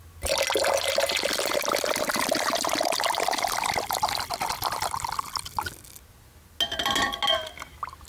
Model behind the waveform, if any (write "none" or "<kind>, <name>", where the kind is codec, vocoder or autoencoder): none